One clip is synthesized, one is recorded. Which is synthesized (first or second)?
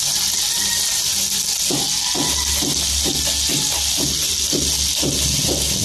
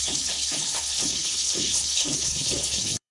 second